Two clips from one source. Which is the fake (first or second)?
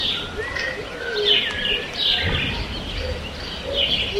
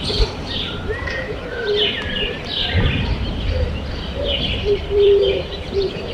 second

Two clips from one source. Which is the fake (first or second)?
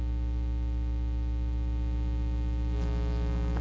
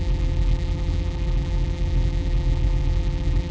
second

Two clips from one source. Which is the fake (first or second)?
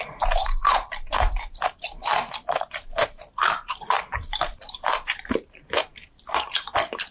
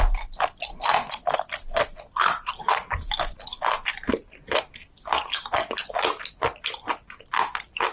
first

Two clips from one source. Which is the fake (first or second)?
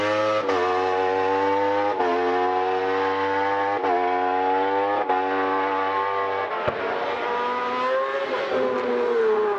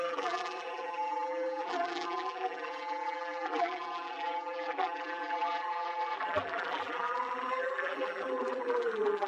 second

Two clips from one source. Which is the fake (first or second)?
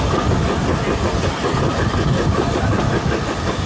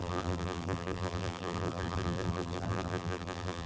second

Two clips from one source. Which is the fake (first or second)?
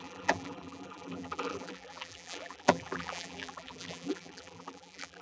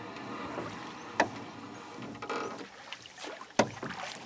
first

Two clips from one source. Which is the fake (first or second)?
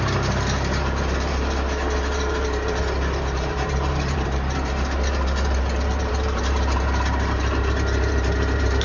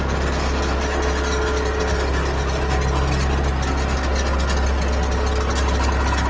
first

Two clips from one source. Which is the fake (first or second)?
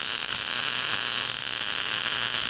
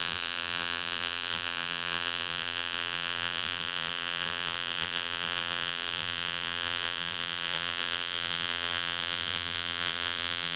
second